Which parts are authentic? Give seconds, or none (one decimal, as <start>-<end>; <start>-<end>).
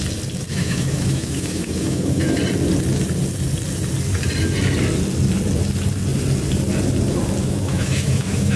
0.0-0.5; 2.4-7.4